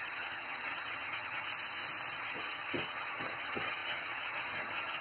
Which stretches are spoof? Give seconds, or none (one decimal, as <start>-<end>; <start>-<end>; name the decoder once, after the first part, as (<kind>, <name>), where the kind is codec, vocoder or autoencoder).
0.0-1.5 (vocoder, HiFi-GAN); 2.1-5.0